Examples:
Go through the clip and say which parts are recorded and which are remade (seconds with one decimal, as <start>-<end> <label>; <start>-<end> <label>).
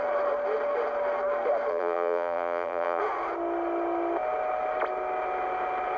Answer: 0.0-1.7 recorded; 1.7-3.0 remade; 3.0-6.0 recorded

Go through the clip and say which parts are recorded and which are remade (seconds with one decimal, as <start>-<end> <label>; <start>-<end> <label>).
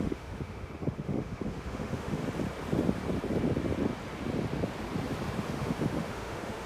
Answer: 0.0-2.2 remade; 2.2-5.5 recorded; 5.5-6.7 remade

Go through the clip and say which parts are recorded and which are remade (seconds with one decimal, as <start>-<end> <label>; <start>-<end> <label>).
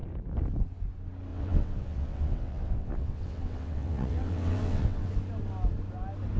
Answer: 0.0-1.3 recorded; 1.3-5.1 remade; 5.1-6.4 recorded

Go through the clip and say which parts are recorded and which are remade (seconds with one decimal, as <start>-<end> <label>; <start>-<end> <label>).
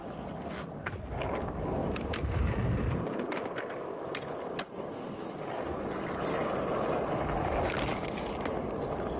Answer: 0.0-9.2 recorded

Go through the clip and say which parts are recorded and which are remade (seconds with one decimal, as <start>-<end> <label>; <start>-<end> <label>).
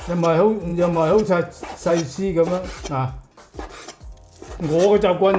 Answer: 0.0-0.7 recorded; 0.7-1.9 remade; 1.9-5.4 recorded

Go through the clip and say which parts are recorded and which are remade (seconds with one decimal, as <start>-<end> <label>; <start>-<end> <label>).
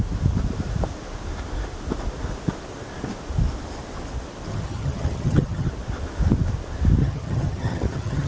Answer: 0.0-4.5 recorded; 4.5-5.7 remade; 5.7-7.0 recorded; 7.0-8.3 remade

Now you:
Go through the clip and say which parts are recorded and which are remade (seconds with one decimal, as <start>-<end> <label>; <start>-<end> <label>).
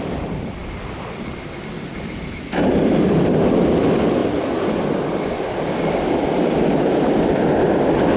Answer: 0.0-8.2 recorded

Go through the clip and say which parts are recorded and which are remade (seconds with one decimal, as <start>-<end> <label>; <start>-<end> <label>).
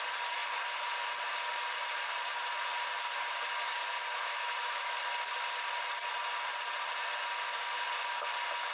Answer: 0.0-4.1 recorded; 4.1-4.9 remade; 4.9-8.7 recorded